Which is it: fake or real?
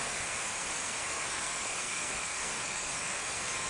fake